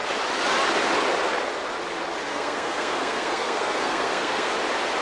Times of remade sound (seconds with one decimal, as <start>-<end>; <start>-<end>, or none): 2.3-4.5